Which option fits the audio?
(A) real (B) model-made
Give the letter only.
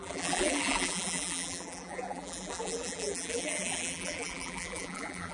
B